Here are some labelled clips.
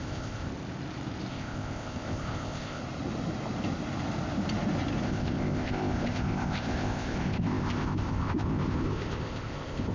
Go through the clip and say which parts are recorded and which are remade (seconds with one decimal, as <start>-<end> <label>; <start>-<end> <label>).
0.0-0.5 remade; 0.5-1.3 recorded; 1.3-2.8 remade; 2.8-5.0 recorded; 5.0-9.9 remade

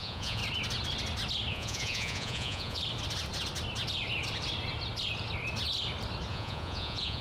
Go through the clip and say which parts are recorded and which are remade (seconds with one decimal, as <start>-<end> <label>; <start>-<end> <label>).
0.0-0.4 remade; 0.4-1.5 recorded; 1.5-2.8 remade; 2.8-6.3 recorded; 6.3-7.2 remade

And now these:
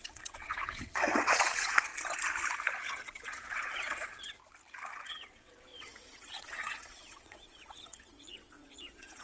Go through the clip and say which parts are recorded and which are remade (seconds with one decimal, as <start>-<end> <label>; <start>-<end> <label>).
0.0-1.9 remade; 1.9-2.9 recorded; 2.9-4.4 remade; 4.4-5.1 recorded; 5.1-9.2 remade